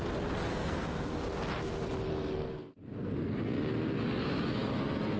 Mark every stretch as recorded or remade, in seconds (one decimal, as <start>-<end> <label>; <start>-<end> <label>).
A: 0.0-0.5 recorded; 0.5-1.1 remade; 1.1-2.1 recorded; 2.1-3.3 remade; 3.3-5.2 recorded